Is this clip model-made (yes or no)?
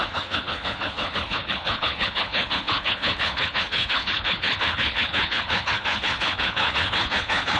yes